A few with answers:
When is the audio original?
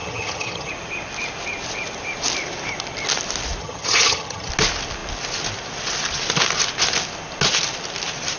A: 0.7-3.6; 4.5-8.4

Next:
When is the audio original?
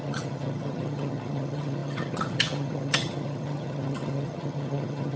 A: none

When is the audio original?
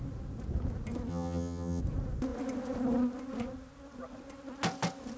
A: 0.0-1.1; 1.8-5.2